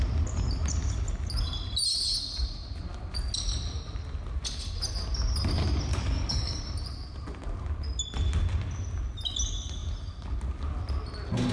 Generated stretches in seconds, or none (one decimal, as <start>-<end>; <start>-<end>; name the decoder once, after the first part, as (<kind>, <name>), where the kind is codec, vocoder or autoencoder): 5.9-6.6 (codec, DAC)